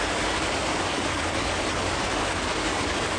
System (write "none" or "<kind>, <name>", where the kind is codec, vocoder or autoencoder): codec, DAC